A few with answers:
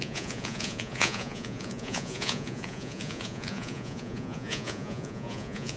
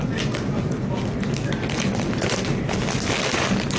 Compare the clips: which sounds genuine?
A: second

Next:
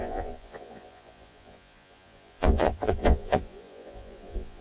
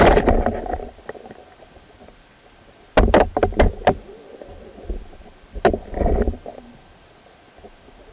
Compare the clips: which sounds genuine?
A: second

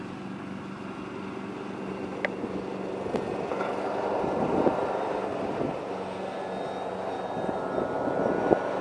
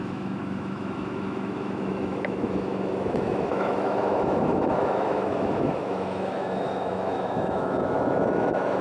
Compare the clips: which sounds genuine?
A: first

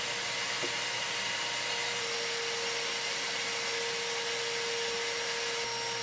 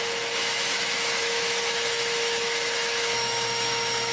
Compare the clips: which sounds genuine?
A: first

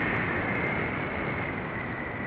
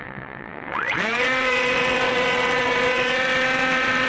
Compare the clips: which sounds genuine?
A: first